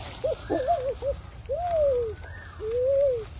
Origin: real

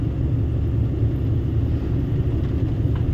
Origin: real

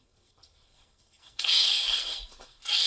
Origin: fake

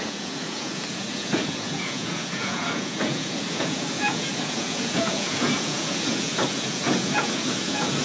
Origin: fake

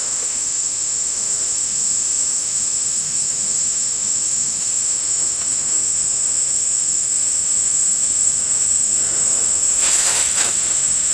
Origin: fake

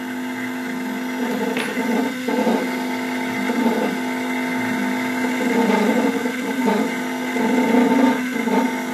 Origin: real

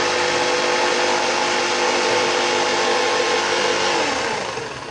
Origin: real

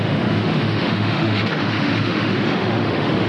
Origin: fake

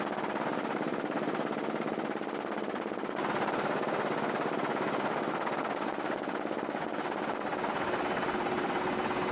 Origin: real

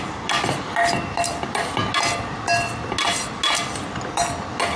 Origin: real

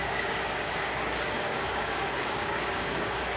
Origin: fake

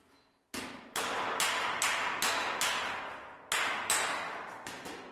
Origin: real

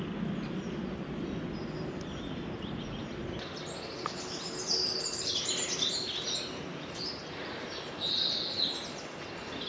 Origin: real